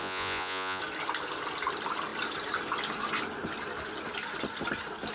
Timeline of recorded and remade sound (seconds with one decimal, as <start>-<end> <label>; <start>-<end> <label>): 0.0-0.8 remade; 0.8-5.1 recorded